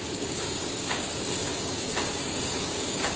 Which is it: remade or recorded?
remade